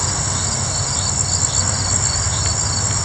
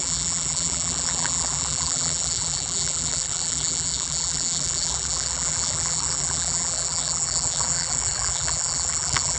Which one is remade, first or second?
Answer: second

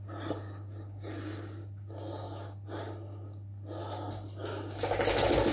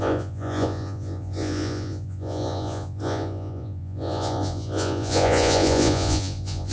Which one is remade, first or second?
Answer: second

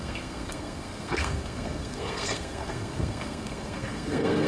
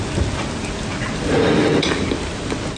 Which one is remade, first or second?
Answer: first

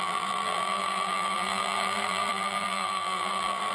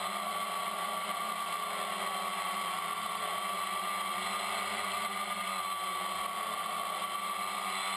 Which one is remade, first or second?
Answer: first